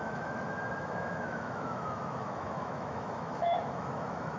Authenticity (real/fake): fake